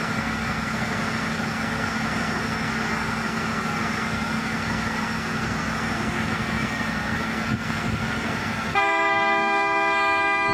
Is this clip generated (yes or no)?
yes